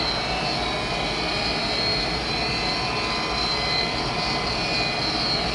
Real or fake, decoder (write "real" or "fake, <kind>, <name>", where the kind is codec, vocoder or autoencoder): real